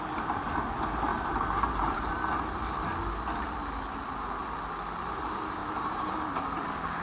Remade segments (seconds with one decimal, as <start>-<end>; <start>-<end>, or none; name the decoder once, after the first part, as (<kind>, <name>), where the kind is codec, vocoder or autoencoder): 1.1-2.1 (vocoder, BigVGAN v2); 5.6-6.1